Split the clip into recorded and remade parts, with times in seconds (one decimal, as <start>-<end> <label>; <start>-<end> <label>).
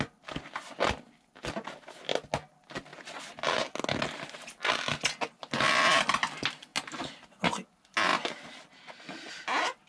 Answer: 0.0-9.9 recorded